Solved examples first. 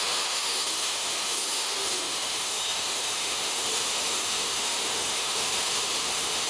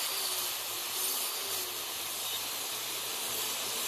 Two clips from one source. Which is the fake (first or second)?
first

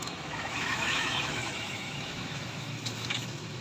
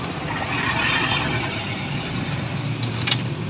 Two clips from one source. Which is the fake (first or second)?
first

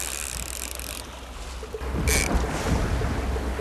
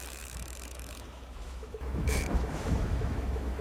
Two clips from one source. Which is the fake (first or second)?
second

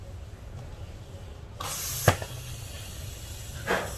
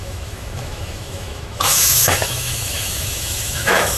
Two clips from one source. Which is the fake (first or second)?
second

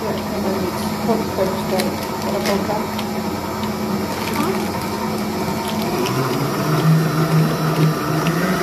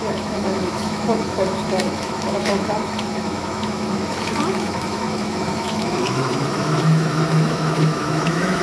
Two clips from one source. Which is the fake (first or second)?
second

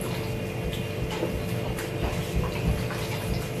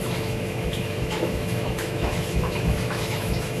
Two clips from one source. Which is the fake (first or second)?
second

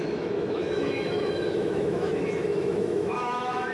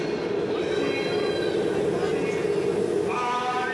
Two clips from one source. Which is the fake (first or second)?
first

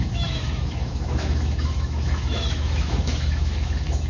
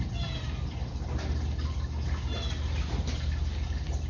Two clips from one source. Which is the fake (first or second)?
first